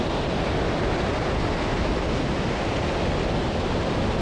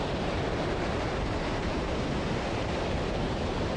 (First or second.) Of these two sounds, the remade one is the second